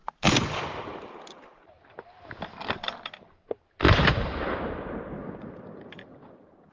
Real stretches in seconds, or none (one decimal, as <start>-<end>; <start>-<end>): 0.0-6.7